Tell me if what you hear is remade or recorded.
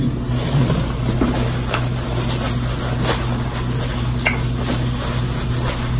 recorded